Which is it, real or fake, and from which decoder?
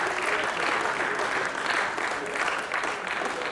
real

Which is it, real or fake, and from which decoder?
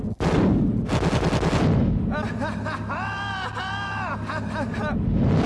real